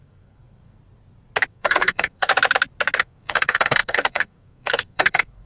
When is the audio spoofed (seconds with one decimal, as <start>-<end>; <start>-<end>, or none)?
0.0-0.8; 1.5-2.3; 3.0-5.5

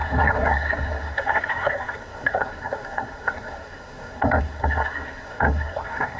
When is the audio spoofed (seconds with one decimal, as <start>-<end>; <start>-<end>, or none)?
0.0-6.2

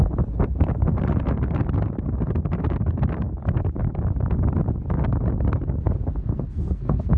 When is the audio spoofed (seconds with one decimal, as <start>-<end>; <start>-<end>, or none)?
6.1-7.2

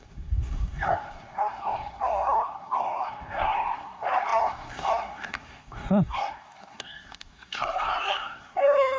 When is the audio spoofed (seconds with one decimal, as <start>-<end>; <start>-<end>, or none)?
0.0-9.0

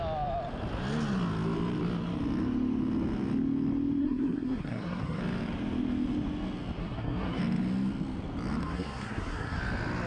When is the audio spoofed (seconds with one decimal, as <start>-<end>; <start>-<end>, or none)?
4.0-5.2; 6.8-7.4; 8.6-9.6

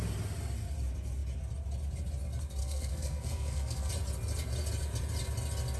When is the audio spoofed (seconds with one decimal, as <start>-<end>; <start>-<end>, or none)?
2.6-3.9

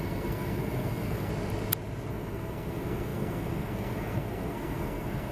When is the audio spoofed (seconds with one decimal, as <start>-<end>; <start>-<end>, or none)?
0.0-1.3; 2.1-5.3

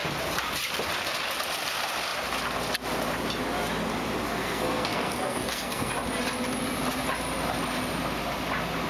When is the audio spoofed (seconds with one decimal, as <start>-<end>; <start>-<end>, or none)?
4.4-5.9